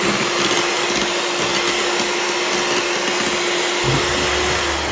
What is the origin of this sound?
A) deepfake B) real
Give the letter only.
B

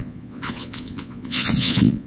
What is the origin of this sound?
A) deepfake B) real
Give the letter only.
A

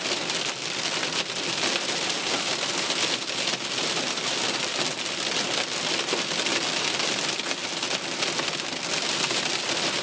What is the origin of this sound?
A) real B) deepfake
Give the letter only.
A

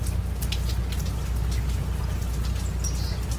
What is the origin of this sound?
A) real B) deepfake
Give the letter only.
A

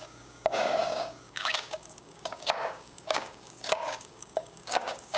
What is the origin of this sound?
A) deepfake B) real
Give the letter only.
A